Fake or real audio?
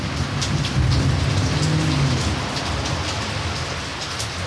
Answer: real